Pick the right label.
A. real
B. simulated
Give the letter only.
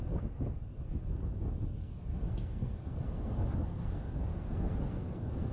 B